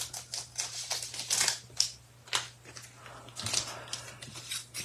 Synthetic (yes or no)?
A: no